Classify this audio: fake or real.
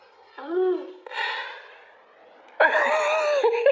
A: real